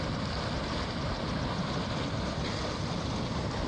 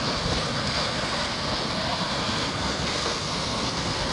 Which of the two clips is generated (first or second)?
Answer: second